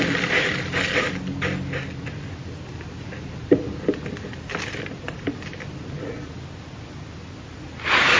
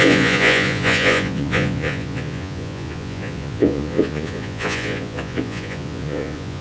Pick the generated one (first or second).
second